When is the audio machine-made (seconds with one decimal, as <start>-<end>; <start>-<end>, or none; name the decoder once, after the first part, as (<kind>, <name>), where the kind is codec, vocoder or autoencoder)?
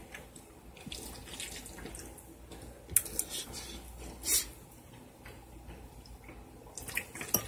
none